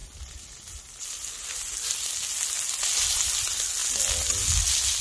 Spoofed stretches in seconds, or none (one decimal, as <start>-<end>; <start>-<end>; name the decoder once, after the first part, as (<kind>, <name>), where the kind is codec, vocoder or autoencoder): none